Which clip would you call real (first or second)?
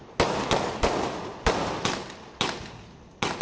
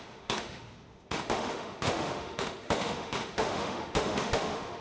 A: first